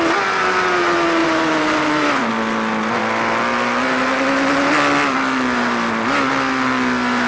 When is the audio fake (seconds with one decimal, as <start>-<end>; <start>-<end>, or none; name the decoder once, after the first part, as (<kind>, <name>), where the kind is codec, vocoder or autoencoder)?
1.2-2.3 (vocoder, BigVGAN v2)